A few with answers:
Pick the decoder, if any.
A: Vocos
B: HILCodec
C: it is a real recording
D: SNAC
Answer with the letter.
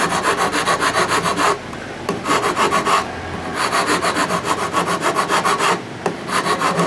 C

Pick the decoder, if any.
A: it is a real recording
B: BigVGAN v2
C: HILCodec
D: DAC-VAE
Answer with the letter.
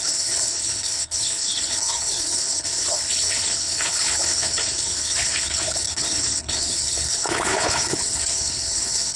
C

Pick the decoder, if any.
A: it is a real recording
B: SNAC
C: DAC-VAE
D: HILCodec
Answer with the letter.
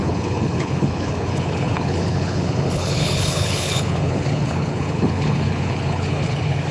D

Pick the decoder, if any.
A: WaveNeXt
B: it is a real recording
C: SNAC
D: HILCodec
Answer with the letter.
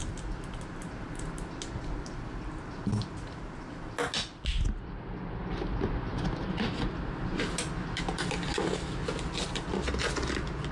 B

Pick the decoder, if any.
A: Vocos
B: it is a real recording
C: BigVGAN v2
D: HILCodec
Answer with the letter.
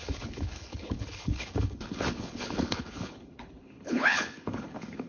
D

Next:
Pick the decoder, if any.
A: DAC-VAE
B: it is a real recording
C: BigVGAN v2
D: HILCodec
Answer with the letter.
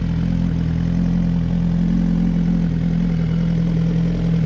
B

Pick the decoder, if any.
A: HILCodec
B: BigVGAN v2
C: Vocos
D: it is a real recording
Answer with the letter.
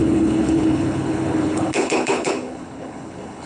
A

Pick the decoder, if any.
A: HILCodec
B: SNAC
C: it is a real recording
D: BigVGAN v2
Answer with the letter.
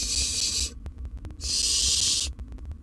C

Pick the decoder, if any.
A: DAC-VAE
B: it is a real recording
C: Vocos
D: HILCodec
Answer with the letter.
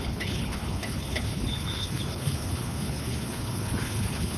D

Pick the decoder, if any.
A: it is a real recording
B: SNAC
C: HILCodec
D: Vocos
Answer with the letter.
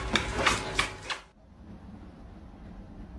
A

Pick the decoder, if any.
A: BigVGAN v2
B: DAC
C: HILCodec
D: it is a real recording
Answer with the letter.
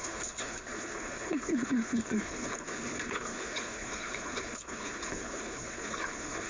C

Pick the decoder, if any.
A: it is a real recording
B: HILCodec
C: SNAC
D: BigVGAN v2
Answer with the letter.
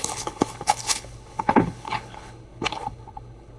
B